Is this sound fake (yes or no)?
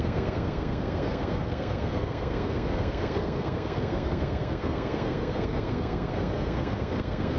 yes